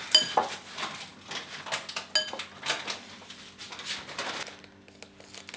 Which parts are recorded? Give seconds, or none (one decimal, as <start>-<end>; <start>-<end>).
0.0-5.6